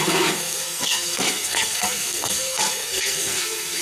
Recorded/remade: remade